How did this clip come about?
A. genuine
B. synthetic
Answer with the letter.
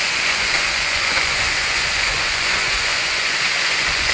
B